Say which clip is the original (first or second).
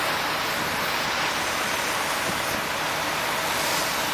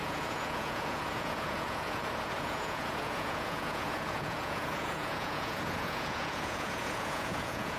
first